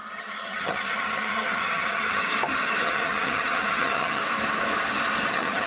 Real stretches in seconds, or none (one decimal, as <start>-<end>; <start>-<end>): 2.2-2.8; 4.2-5.3